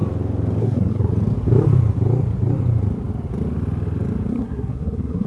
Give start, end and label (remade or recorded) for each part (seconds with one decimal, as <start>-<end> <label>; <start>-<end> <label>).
0.0-0.6 recorded; 0.6-1.1 remade; 1.1-4.3 recorded; 4.3-5.3 remade